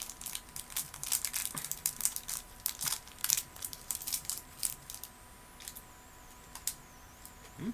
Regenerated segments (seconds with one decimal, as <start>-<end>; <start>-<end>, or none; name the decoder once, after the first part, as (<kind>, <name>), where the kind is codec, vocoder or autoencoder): 1.4-4.6 (vocoder, BigVGAN v2)